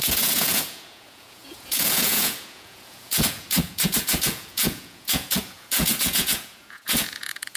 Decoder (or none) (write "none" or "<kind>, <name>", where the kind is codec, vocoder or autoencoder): vocoder, Vocos